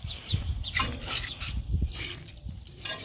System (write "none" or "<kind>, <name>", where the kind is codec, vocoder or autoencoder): vocoder, BigVGAN v2